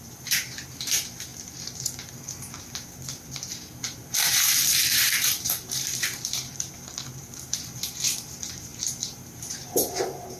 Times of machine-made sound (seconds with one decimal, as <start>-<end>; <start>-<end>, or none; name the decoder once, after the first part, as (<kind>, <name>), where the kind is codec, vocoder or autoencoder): 0.0-10.4 (vocoder, BigVGAN v2)